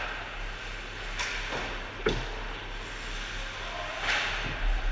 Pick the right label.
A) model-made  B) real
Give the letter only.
B